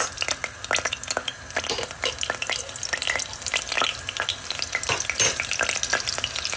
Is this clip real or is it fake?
real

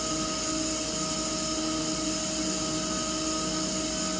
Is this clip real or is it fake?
real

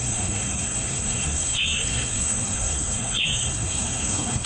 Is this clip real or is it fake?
fake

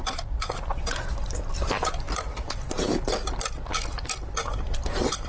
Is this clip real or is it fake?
real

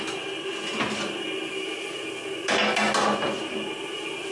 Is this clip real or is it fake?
real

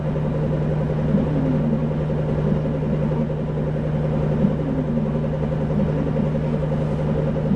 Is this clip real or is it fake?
real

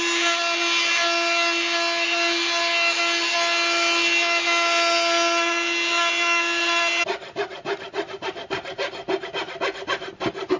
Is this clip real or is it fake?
real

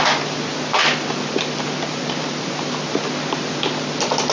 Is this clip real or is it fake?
real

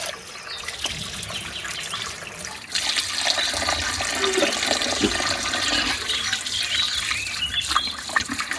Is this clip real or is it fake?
real